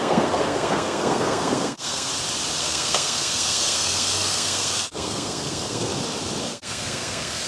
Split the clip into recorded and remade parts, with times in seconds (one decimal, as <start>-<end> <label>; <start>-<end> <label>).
0.0-2.1 remade; 2.1-2.6 recorded; 2.6-5.9 remade; 5.9-6.4 recorded; 6.4-7.5 remade